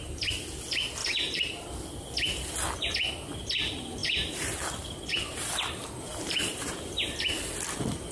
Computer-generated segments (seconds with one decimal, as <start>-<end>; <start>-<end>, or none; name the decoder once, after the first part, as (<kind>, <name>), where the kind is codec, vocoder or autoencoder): 1.0-1.7 (vocoder, BigVGAN v2); 4.0-5.1; 6.1-6.9